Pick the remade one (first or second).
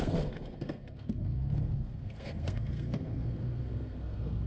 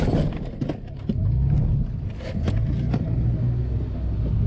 first